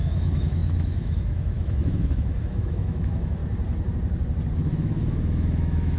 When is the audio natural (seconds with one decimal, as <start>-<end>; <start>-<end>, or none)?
3.4-4.5